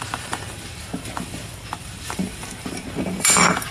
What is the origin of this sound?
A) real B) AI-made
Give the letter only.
B